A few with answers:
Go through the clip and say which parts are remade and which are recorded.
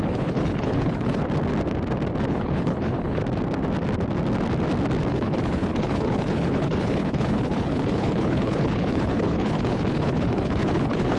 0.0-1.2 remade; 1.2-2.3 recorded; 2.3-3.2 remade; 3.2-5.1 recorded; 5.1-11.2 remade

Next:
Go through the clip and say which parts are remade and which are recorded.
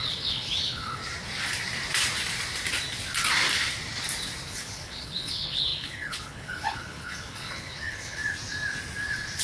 0.0-1.0 remade; 1.0-4.5 recorded; 4.5-8.2 remade; 8.2-9.4 recorded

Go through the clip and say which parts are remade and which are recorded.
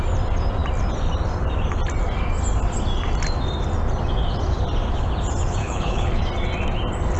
0.0-5.6 recorded; 5.6-6.2 remade; 6.2-7.2 recorded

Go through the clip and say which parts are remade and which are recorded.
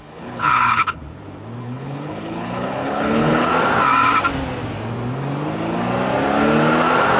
0.0-1.0 remade; 1.0-1.6 recorded; 1.6-3.5 remade; 3.5-7.2 recorded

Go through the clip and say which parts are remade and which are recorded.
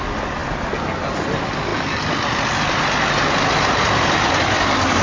0.0-5.0 recorded